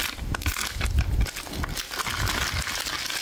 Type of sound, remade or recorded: recorded